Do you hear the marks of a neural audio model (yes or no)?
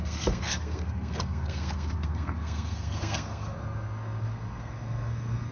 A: yes